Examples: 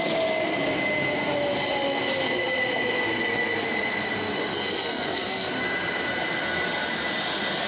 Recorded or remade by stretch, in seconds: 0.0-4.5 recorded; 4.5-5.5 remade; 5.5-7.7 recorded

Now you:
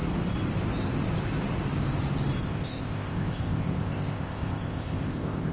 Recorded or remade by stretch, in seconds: 0.0-2.4 recorded; 2.4-5.5 remade